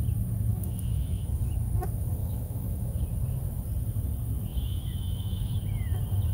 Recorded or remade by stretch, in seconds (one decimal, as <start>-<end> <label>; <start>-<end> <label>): 0.0-0.5 recorded; 0.5-1.3 remade; 1.3-2.2 recorded; 2.2-3.0 remade; 3.0-4.5 recorded; 4.5-5.5 remade; 5.5-6.3 recorded